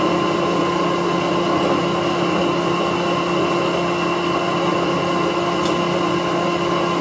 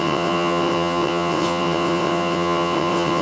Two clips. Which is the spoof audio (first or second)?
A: second